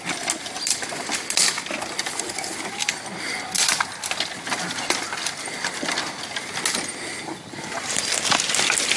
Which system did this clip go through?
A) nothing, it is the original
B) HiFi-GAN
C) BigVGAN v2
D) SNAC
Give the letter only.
A